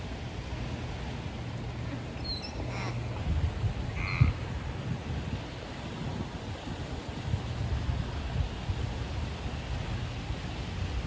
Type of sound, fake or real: real